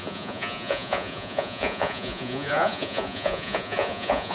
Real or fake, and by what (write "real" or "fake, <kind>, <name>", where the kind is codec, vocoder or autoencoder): fake, vocoder, Vocos